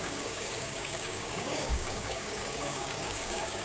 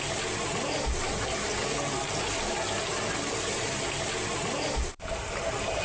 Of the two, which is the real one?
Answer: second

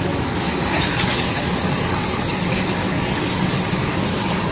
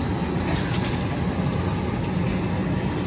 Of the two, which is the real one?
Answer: second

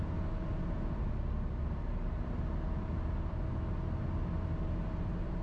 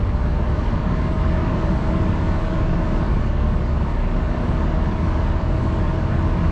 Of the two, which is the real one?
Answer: first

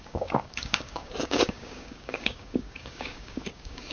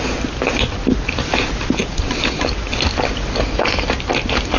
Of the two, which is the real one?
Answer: second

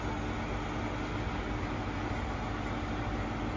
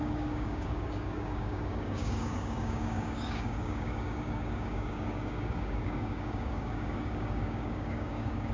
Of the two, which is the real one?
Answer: first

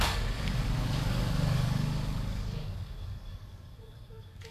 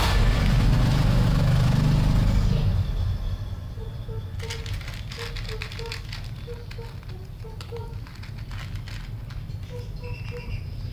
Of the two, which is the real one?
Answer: second